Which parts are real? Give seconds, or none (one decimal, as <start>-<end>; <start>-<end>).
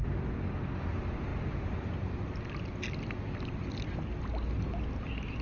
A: 0.0-5.4